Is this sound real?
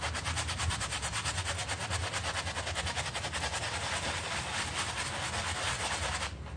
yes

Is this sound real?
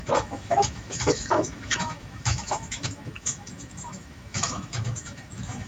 no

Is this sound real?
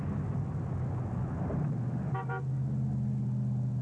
yes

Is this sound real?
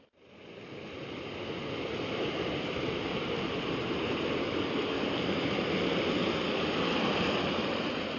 yes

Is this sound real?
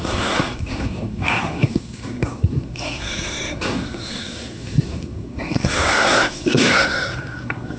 no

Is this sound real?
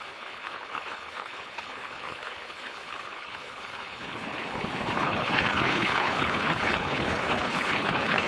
no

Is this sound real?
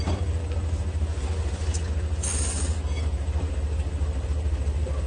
yes